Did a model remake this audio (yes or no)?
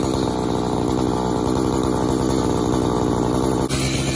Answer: no